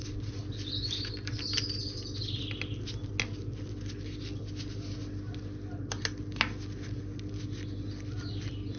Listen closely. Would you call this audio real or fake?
real